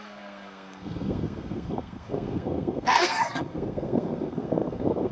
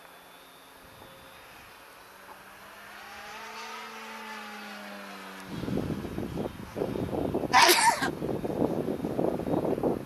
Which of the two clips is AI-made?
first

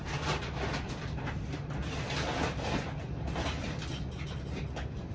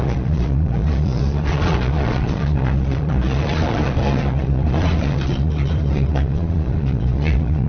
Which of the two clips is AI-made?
second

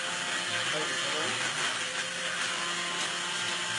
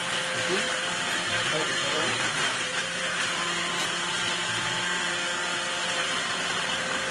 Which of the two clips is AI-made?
second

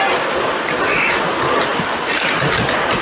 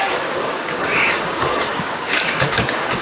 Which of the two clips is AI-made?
second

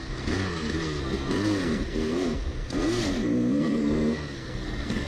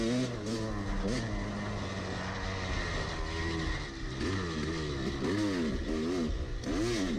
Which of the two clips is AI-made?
first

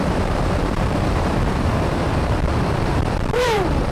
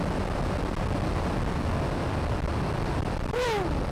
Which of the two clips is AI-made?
first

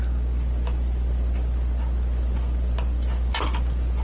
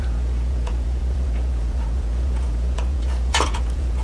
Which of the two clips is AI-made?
second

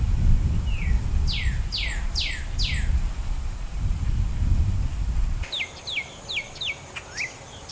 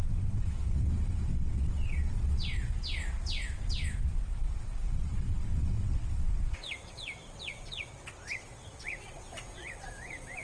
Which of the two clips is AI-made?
second